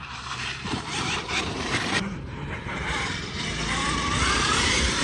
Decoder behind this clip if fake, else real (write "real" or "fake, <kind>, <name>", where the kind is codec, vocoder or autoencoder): fake, vocoder, BigVGAN v2